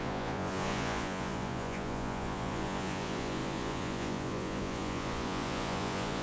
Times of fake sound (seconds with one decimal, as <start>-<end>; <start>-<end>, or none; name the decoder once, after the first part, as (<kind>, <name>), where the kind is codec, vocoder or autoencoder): 0.0-6.2 (vocoder, Vocos)